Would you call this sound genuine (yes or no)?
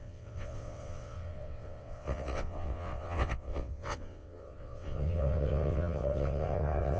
no